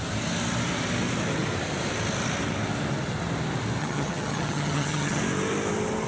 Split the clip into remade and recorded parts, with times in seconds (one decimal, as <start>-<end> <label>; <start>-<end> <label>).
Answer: 0.0-3.8 recorded; 3.8-5.2 remade; 5.2-6.1 recorded